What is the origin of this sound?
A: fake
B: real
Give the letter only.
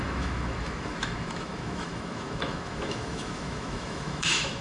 A